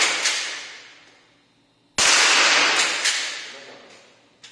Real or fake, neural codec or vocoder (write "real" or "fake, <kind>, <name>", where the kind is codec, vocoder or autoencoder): real